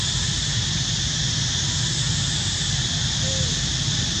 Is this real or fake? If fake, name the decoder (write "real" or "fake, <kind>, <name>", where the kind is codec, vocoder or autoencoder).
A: real